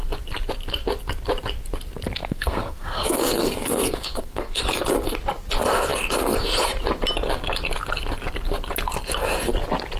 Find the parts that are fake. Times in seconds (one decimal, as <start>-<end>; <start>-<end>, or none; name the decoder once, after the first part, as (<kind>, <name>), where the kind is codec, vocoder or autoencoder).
2.2-4.6 (codec, SNAC)